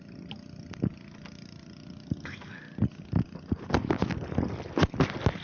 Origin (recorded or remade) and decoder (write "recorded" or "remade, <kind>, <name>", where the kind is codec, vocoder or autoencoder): recorded